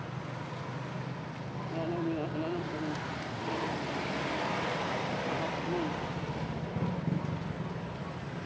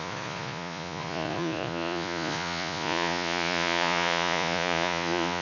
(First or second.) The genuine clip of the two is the first